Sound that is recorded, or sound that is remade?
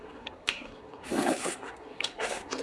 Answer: remade